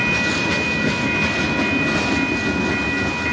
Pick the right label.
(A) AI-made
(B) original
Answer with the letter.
B